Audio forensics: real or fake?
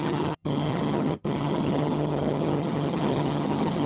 fake